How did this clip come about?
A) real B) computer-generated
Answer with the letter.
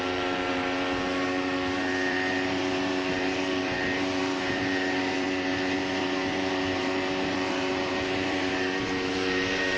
B